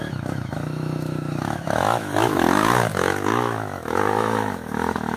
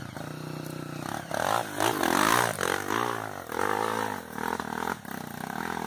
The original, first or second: second